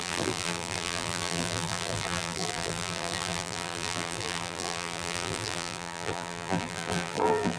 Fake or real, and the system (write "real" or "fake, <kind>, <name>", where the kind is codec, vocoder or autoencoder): fake, vocoder, BigVGAN v2